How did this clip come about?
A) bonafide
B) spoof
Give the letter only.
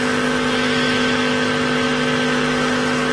A